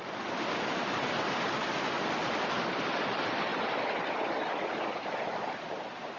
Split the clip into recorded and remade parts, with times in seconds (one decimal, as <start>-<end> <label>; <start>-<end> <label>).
0.0-6.2 recorded